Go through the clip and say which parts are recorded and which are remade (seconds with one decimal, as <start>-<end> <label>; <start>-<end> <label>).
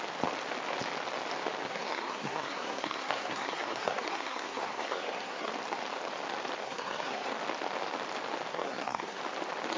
0.0-1.7 recorded; 1.7-5.5 remade; 5.5-6.6 recorded; 6.6-7.3 remade; 7.3-8.5 recorded; 8.5-9.2 remade; 9.2-9.8 recorded